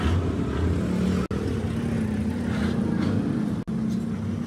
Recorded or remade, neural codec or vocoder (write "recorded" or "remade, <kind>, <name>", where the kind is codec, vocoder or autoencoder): recorded